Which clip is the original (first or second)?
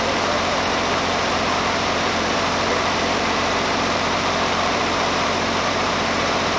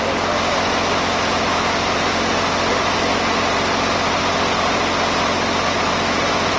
second